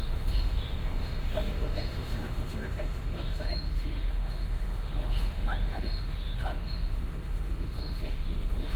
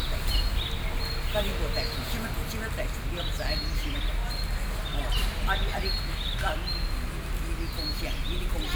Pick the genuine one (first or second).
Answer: second